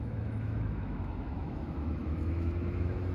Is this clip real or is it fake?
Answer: fake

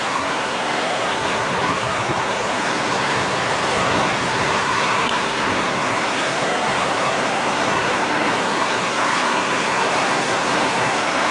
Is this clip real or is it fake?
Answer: fake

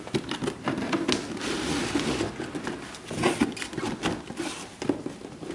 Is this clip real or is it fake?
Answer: real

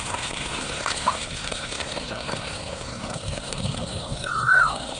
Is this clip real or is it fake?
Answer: fake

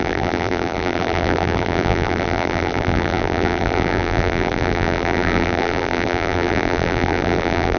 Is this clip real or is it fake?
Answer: fake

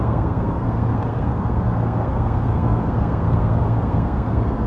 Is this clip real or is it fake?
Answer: fake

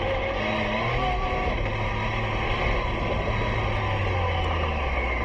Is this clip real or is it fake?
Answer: real